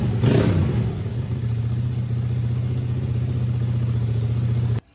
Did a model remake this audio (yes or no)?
no